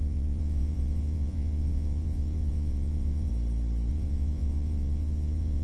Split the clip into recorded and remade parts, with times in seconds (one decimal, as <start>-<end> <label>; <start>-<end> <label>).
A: 0.0-3.3 remade; 3.3-3.9 recorded; 3.9-5.6 remade